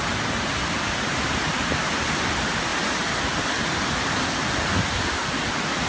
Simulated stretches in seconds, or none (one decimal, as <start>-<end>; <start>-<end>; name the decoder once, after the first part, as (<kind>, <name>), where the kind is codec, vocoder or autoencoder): none